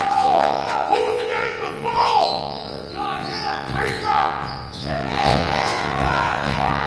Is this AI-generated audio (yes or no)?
yes